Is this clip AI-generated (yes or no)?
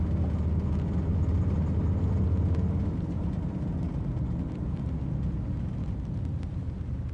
no